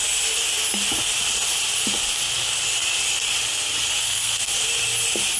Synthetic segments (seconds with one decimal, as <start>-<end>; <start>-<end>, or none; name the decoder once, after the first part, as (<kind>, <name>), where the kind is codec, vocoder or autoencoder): 3.9-4.5 (codec, SNAC)